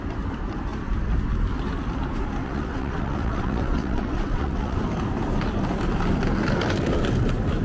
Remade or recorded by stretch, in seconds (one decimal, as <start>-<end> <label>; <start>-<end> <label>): 0.0-2.4 recorded; 2.4-4.8 remade; 4.8-7.6 recorded